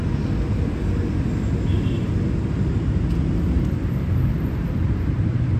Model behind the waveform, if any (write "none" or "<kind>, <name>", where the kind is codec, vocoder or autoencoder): none